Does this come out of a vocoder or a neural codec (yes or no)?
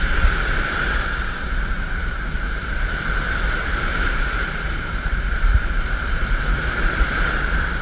yes